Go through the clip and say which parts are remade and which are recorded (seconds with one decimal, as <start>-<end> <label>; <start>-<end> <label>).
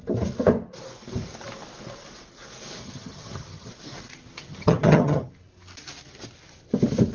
0.0-2.8 recorded; 2.8-3.7 remade; 3.7-4.5 recorded; 4.5-5.3 remade; 5.3-7.1 recorded